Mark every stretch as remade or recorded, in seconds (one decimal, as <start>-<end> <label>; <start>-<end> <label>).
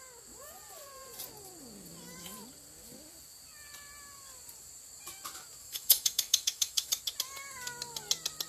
0.0-5.6 recorded; 5.6-7.0 remade; 7.0-8.5 recorded